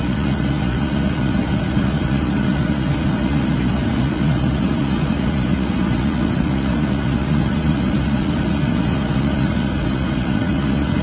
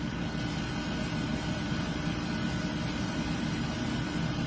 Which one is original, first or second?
second